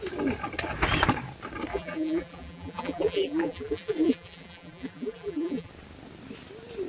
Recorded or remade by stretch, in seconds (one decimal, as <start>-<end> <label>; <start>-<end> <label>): 0.0-1.7 recorded; 1.7-5.7 remade; 5.7-6.9 recorded